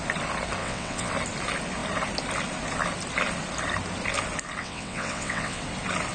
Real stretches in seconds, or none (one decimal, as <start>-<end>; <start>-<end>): 0.0-0.6; 1.1-4.6; 5.6-6.1

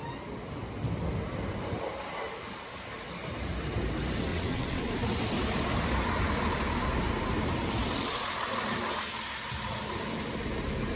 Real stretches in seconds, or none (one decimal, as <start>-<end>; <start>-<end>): 0.0-4.3; 4.9-11.0

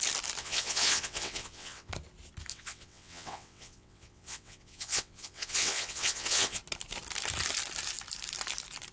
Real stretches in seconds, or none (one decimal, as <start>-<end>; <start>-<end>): 0.0-0.4; 1.9-2.5; 6.6-8.9

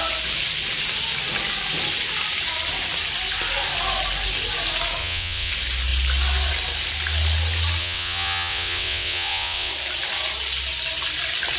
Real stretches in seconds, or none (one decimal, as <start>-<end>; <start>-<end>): 0.0-5.0; 5.5-7.8; 9.7-11.6

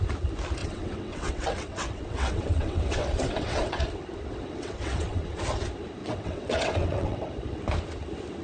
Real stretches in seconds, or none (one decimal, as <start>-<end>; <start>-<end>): 0.0-0.6; 3.8-4.3; 5.4-6.0; 7.3-8.4

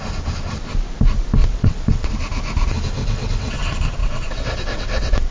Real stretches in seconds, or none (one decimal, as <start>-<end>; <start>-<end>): 0.0-1.4; 2.1-3.0; 3.6-4.0